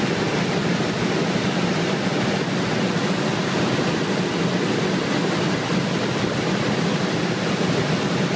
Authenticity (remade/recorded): recorded